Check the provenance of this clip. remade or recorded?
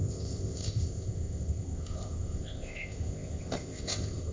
remade